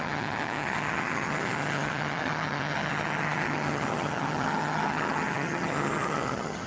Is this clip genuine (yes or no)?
no